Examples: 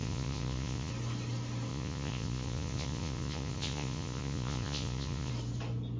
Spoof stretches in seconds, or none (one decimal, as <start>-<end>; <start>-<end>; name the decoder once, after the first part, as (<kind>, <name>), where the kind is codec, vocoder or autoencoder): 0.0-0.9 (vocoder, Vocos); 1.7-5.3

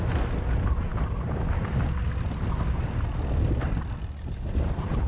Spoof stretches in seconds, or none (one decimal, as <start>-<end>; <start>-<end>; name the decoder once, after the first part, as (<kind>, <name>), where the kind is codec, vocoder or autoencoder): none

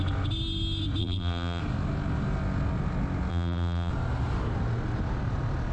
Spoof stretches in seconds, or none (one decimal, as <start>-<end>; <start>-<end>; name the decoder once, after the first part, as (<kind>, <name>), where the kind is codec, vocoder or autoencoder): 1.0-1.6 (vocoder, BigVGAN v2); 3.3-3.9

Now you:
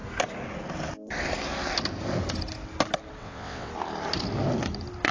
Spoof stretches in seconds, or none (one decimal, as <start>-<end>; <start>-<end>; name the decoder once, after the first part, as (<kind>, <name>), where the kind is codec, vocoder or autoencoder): 3.2-3.7 (vocoder, WaveNeXt)